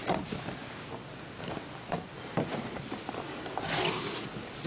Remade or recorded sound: recorded